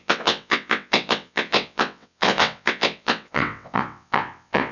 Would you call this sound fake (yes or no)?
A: yes